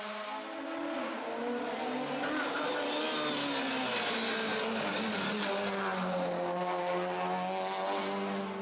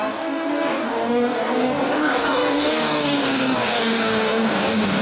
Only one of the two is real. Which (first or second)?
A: first